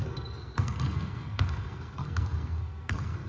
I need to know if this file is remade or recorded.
remade